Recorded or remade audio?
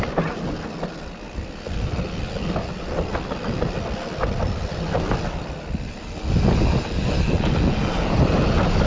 recorded